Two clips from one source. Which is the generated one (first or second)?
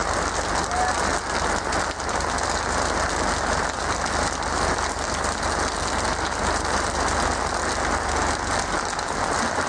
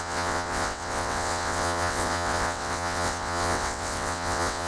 second